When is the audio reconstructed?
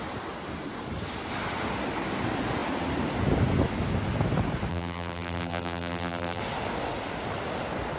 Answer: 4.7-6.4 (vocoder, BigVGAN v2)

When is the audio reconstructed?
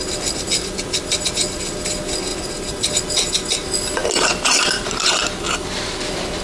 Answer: 0.0-1.3 (vocoder, BigVGAN v2); 2.3-2.9; 4.0-5.2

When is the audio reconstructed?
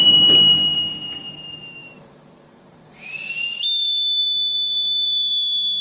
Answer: 1.8-3.4 (vocoder, BigVGAN v2)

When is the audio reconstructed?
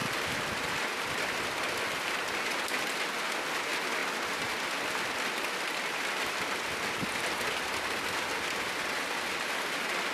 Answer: none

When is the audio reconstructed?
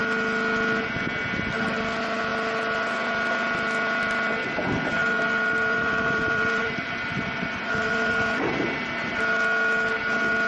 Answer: 5.0-9.2 (vocoder, BigVGAN v2)